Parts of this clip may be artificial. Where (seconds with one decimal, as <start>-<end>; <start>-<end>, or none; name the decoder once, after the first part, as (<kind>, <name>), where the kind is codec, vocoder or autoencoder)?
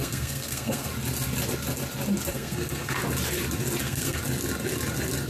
0.0-0.9 (codec, SNAC); 2.3-3.0; 3.8-4.2